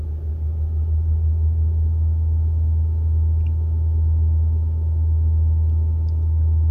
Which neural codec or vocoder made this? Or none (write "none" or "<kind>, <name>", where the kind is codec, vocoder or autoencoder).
none